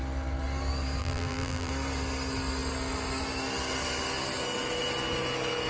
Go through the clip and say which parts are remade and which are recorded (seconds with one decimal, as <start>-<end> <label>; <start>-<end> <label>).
0.0-1.0 recorded; 1.0-1.7 remade; 1.7-5.7 recorded